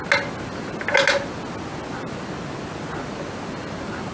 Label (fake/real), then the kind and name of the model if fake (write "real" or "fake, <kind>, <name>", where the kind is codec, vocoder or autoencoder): real